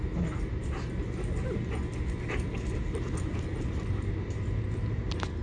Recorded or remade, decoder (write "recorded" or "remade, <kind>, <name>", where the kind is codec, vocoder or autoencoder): recorded